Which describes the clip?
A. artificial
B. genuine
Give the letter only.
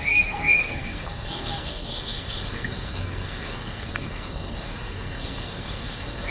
A